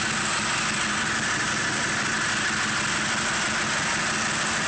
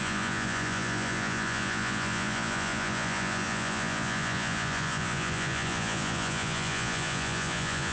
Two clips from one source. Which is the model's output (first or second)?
second